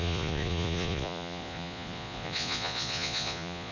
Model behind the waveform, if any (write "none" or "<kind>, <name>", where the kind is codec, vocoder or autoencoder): vocoder, Vocos